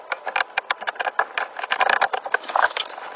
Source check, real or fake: real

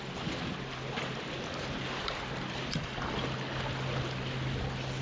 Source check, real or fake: real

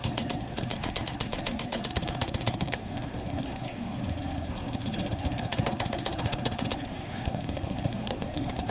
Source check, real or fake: fake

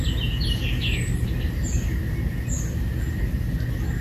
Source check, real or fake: real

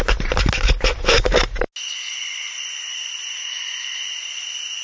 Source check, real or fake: real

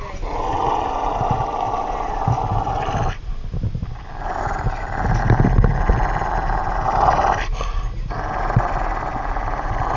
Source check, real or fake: real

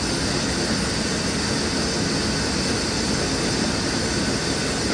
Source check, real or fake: real